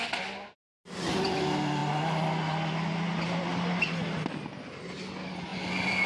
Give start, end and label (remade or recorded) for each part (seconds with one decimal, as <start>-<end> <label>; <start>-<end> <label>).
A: 0.0-6.1 recorded